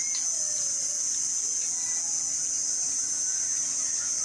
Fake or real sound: real